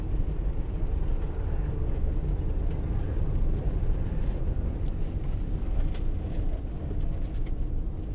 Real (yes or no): yes